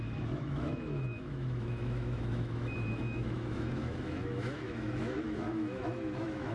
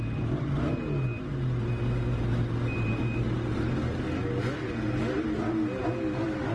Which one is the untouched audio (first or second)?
second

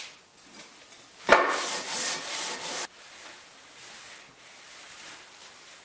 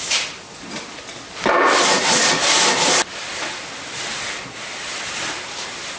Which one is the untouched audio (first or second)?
first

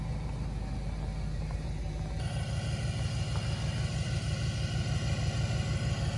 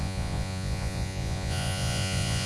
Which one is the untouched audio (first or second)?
first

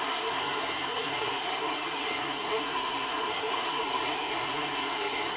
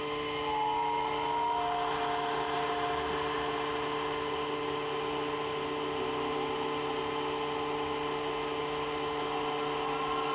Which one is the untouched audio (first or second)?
second